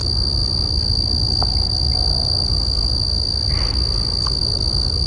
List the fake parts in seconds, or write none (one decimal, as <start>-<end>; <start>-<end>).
none

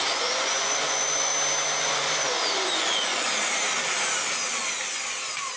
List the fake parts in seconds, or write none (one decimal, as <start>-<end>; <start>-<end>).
0.0-1.3; 1.8-3.3

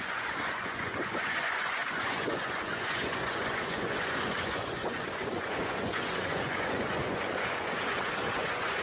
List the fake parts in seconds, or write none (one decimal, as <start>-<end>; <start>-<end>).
0.0-8.8

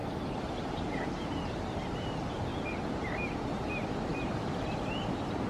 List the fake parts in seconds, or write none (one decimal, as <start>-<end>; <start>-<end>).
0.8-2.5

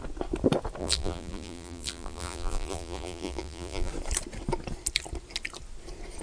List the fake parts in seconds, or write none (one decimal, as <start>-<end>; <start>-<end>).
0.8-3.9

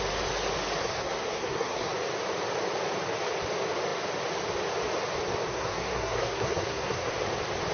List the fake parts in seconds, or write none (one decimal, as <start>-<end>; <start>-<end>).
0.8-1.9; 5.5-7.1